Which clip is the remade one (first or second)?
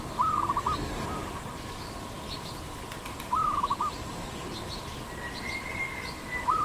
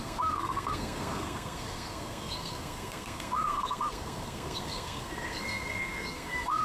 second